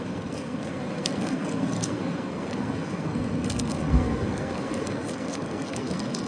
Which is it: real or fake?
fake